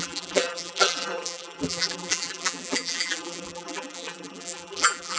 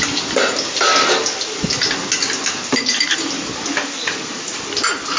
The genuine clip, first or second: second